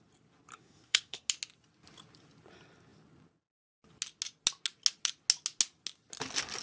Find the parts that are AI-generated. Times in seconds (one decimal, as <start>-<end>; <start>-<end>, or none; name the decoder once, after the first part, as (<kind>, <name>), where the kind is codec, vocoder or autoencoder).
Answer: 0.5-1.3 (codec, SNAC)